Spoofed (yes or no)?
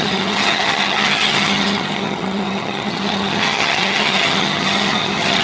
yes